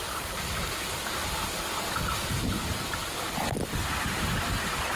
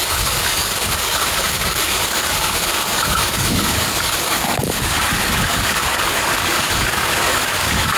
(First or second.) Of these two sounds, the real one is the first